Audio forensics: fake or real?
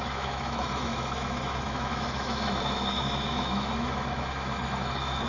fake